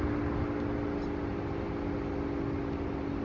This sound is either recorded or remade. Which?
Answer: recorded